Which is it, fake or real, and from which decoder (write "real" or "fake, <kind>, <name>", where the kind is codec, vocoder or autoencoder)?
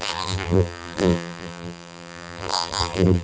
fake, vocoder, BigVGAN v2